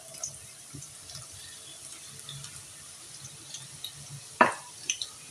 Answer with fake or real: fake